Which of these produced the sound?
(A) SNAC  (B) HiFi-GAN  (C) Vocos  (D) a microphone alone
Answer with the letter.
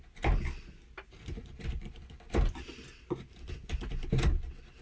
D